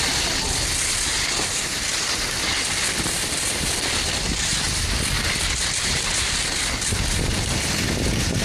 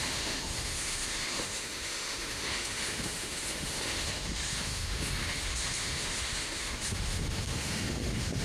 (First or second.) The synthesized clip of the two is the second